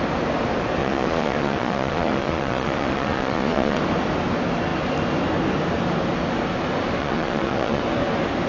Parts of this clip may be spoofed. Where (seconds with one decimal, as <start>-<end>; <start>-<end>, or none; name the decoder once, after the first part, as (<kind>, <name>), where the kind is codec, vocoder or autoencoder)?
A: 0.8-3.8 (vocoder, Vocos); 7.0-7.8

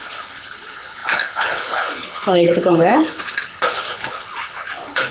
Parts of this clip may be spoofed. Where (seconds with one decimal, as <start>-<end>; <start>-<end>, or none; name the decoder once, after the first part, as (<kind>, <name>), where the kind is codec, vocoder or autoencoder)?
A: 0.0-5.1 (codec, HILCodec)

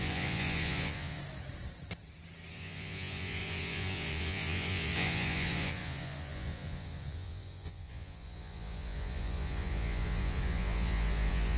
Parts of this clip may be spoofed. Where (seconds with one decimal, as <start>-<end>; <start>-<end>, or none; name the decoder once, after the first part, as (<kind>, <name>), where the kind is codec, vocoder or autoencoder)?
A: 0.0-1.2 (vocoder, Vocos); 2.5-11.6

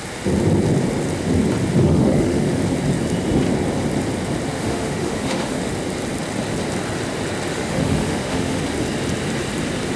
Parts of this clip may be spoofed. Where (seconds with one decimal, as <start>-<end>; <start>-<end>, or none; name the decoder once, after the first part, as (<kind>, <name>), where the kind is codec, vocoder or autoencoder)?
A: 1.8-2.6 (autoencoder, DAC-VAE); 4.5-5.7; 7.5-8.6

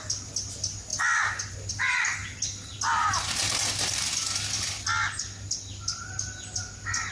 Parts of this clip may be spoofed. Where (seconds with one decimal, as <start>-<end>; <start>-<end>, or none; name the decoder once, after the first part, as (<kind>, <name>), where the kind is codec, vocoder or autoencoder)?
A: none

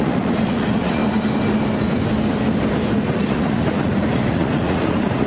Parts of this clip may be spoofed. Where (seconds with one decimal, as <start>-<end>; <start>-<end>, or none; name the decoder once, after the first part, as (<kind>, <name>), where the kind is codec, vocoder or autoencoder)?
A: 0.0-1.0 (vocoder, Vocos); 3.1-5.3

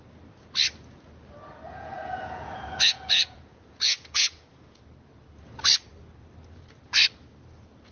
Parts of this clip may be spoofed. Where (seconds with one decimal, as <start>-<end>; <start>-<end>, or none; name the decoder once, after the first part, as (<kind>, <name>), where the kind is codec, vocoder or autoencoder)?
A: 1.7-4.8 (vocoder, Vocos)

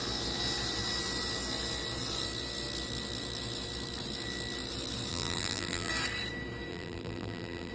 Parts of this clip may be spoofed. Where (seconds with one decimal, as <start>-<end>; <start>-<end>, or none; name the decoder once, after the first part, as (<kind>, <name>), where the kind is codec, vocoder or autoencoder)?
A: 5.1-5.9 (vocoder, BigVGAN v2); 6.7-7.7